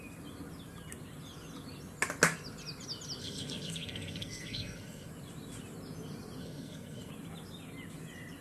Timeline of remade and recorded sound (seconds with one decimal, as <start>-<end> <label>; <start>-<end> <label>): 0.0-3.2 recorded; 3.2-5.1 remade; 5.1-6.4 recorded; 6.4-7.1 remade; 7.1-8.4 recorded